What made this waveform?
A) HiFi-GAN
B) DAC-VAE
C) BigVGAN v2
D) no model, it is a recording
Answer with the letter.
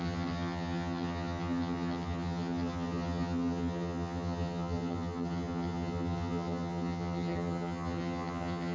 A